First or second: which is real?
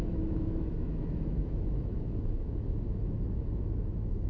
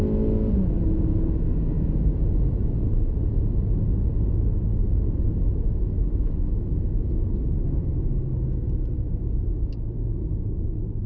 second